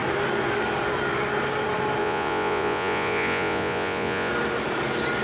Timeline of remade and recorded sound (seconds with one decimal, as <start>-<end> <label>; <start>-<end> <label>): 0.0-2.0 recorded; 2.0-4.3 remade; 4.3-5.2 recorded